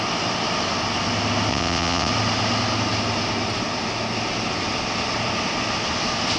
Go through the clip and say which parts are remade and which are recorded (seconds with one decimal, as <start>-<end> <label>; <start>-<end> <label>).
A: 0.0-1.5 recorded; 1.5-2.1 remade; 2.1-6.4 recorded